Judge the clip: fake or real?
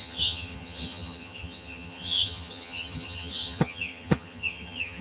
fake